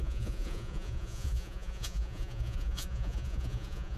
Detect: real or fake fake